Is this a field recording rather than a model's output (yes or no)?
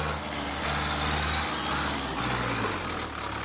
yes